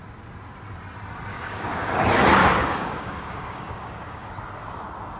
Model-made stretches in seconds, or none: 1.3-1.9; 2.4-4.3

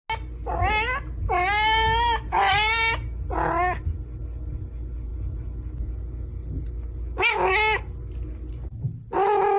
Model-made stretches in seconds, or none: none

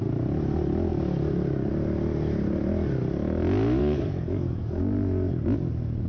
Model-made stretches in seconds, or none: 3.8-4.8